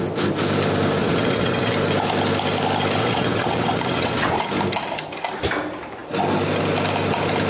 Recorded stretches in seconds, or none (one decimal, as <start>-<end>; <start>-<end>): 0.0-1.0; 1.7-3.0; 4.4-7.5